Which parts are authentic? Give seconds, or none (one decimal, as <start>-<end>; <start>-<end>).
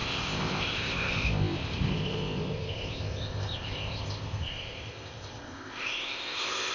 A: none